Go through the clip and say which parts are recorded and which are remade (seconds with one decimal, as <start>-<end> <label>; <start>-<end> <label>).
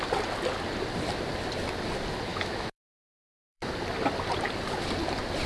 0.0-2.3 recorded; 2.3-3.7 remade; 3.7-5.5 recorded